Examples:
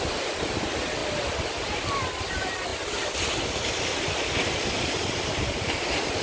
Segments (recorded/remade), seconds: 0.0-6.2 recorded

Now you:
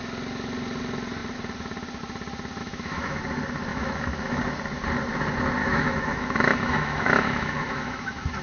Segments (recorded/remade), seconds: 0.0-2.6 recorded; 2.6-3.2 remade; 3.2-3.7 recorded; 3.7-4.4 remade; 4.4-5.6 recorded; 5.6-8.4 remade

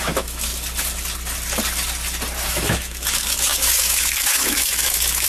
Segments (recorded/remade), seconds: 0.0-0.5 remade; 0.5-2.5 recorded; 2.5-5.3 remade

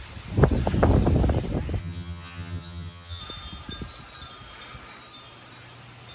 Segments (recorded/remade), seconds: 0.0-1.8 recorded; 1.8-3.2 remade; 3.2-6.1 recorded

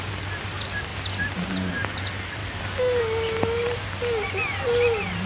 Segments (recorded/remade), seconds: 0.0-5.3 recorded

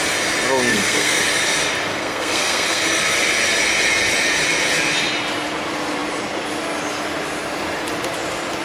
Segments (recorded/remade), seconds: 0.0-0.7 recorded; 0.7-1.2 remade; 1.2-1.9 recorded; 1.9-2.8 remade; 2.8-8.6 recorded

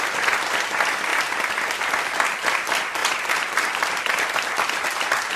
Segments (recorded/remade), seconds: 0.0-1.1 recorded; 1.1-2.5 remade; 2.5-3.0 recorded; 3.0-4.4 remade; 4.4-5.4 recorded

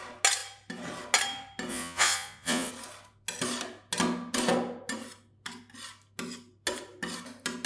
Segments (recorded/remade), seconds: 0.0-1.7 recorded; 1.7-2.7 remade; 2.7-7.7 recorded